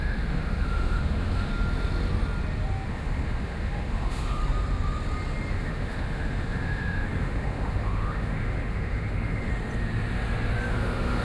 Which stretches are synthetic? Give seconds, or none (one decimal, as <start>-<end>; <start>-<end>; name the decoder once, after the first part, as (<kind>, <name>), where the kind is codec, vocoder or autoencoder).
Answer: 0.0-1.5 (autoencoder, DAC-VAE); 2.9-4.4; 5.5-9.5; 10.7-11.2